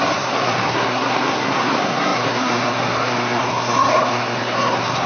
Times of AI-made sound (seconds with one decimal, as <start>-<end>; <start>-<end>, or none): 0.0-5.1